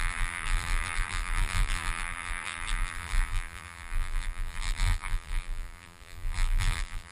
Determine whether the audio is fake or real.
fake